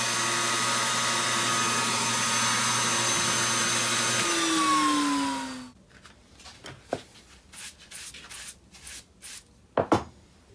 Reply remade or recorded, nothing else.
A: recorded